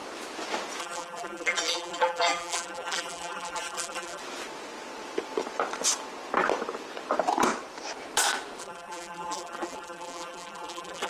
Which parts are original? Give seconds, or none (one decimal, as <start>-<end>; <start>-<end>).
0.0-0.8; 4.2-8.6